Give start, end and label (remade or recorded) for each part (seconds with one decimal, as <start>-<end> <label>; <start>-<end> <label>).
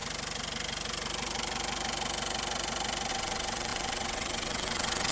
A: 0.0-3.1 recorded; 3.1-5.1 remade